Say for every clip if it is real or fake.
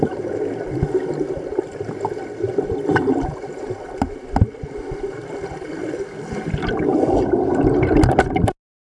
real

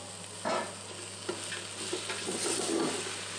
real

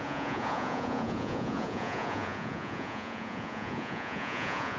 fake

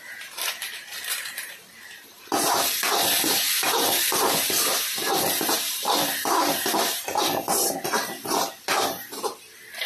fake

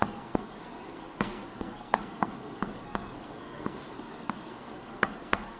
fake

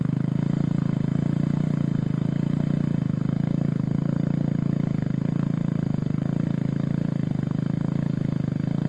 real